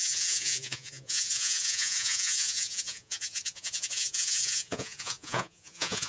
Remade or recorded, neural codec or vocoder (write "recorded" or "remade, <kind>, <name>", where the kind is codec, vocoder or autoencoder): remade, vocoder, Vocos